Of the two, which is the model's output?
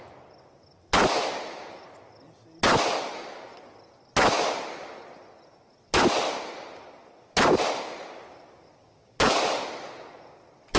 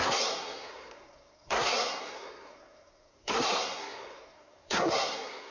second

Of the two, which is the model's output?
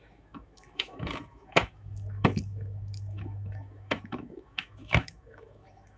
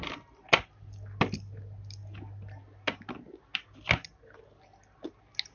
first